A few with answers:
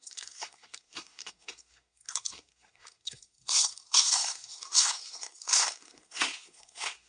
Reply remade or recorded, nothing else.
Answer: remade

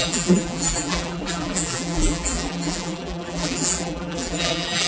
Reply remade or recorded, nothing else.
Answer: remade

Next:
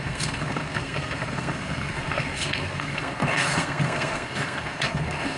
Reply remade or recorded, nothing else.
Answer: remade